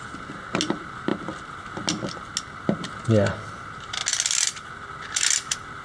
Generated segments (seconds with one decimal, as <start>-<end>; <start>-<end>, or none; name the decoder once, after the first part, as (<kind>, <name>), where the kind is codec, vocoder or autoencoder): none